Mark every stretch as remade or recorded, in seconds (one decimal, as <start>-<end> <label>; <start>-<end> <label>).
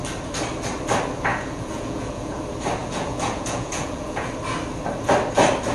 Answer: 0.0-1.3 recorded; 1.3-2.4 remade; 2.4-2.8 recorded; 2.8-4.3 remade; 4.3-5.7 recorded